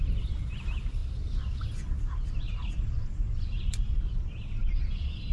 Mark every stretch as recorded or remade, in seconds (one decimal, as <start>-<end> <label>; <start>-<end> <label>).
0.0-5.3 recorded